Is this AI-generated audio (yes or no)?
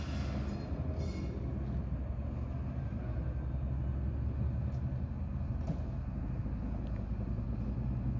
no